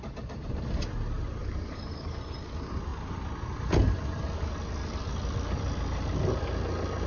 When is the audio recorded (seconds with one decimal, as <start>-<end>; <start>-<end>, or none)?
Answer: 0.0-1.4; 2.2-7.1